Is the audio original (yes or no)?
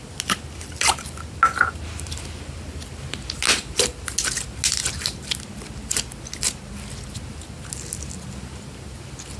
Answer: yes